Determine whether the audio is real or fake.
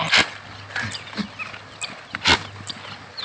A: real